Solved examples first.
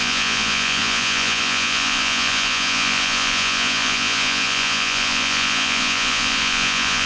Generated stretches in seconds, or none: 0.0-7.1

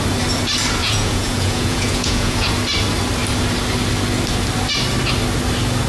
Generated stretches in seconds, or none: 0.8-2.5

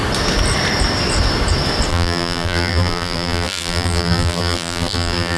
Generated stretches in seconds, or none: 1.9-5.4

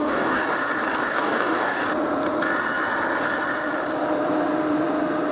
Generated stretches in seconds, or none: 0.0-0.4; 1.1-1.8

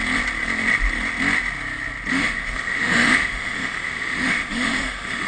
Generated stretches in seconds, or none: 2.1-5.3

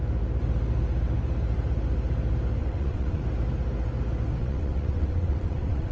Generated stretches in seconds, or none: 2.6-3.2; 4.4-5.9

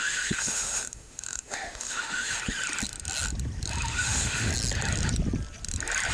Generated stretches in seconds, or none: 0.0-2.4; 3.9-4.5

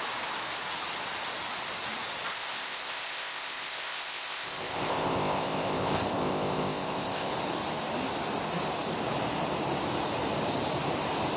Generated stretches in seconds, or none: 2.3-7.3